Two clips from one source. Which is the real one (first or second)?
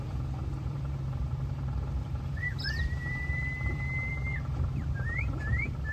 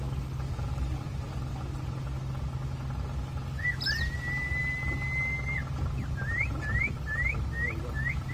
second